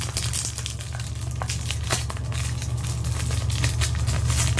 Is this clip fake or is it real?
real